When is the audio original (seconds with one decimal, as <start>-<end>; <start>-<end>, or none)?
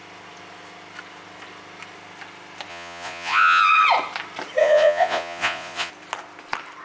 0.0-2.7; 3.6-4.6; 5.9-6.8